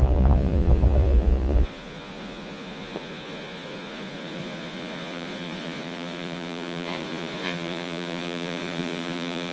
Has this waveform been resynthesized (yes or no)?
yes